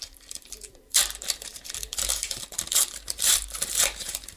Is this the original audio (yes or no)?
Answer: no